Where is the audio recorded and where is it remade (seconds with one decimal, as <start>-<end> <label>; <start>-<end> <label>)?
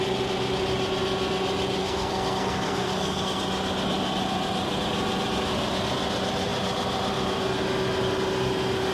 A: 0.0-1.8 recorded; 1.8-3.4 remade; 3.4-8.9 recorded